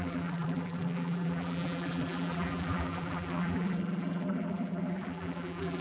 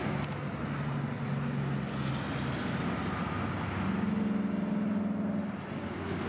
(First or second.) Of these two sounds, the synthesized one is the first